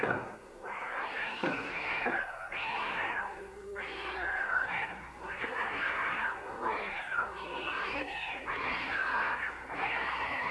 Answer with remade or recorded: remade